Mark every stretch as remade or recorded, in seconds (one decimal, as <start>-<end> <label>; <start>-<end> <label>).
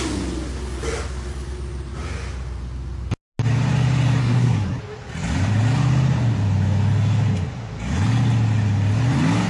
0.0-4.2 recorded; 4.2-4.8 remade; 4.8-9.5 recorded